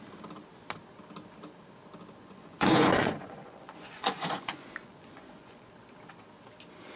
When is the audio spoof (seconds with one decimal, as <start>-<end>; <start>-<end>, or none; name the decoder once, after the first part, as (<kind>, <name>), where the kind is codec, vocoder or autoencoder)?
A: 2.2-5.7 (vocoder, Vocos)